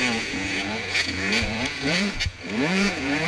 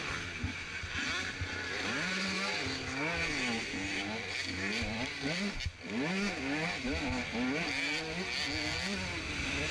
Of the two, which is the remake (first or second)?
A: first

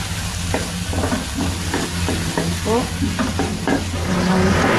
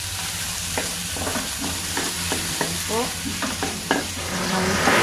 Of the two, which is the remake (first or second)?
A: second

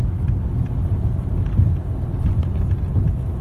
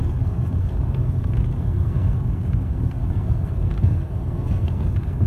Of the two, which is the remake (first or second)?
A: second